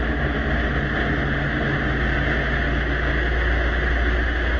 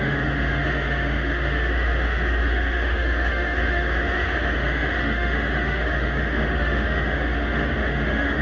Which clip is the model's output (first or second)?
second